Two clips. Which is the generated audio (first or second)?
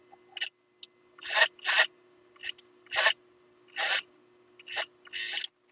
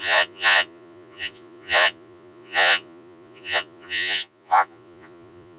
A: second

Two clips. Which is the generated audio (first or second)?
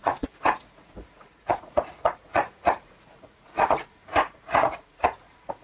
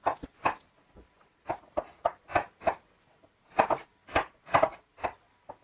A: first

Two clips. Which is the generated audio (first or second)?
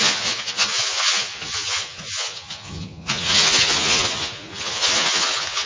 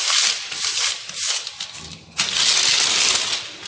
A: first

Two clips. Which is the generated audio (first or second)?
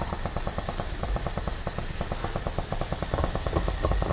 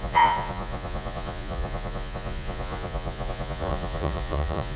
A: second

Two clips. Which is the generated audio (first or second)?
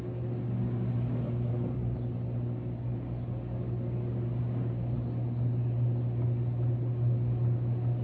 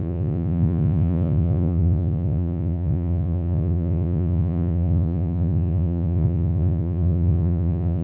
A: second